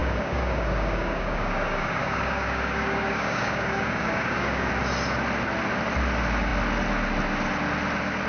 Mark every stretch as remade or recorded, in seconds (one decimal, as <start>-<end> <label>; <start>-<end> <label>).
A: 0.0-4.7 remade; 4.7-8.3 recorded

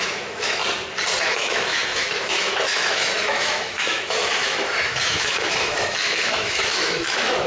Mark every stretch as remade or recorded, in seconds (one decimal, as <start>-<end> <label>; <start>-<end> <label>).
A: 0.0-0.6 remade; 0.6-1.3 recorded; 1.3-7.5 remade

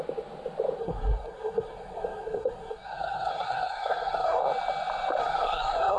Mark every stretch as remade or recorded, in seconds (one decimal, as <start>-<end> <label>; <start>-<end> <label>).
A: 0.0-0.8 recorded; 0.8-4.4 remade; 4.4-5.2 recorded; 5.2-6.0 remade

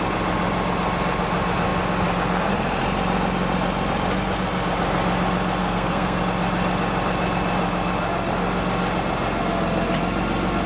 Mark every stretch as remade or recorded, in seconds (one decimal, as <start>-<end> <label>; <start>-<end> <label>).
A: 0.0-5.6 recorded; 5.6-6.2 remade; 6.2-10.7 recorded

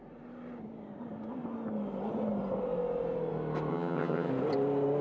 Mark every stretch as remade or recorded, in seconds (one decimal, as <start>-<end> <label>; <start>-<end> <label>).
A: 0.0-3.7 recorded; 3.7-4.3 remade; 4.3-5.0 recorded

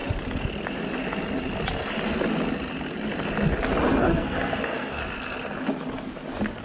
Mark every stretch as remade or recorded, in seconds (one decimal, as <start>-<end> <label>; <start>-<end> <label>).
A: 0.0-4.0 recorded; 4.0-5.0 remade; 5.0-6.6 recorded

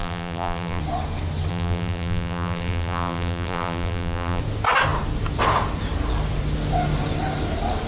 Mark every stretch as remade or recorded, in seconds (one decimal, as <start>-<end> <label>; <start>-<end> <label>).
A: 0.0-0.8 remade; 0.8-1.5 recorded; 1.5-4.4 remade; 4.4-7.9 recorded